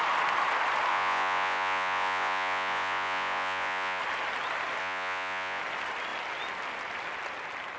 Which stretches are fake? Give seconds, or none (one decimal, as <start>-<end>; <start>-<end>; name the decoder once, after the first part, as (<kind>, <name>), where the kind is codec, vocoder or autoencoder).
0.9-4.0 (vocoder, Vocos); 4.8-5.6